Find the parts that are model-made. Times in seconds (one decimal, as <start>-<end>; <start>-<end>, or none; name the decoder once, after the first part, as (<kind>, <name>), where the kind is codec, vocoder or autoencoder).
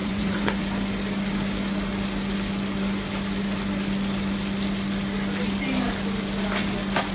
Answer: 0.0-0.6 (vocoder, Vocos)